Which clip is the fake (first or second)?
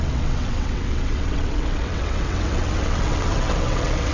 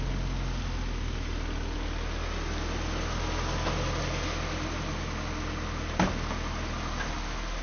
first